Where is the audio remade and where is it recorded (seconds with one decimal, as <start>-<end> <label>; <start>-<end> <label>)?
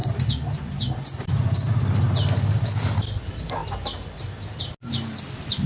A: 0.0-5.7 recorded